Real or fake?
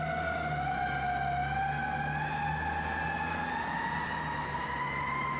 real